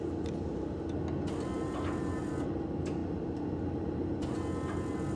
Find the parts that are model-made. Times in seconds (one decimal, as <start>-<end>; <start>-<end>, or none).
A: none